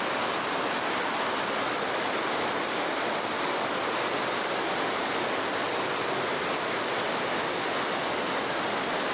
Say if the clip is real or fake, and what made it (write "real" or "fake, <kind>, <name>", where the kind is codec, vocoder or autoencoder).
real